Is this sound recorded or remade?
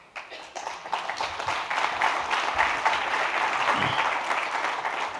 recorded